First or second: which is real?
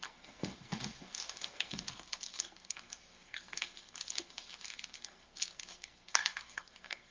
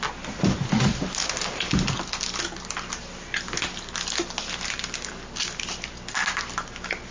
second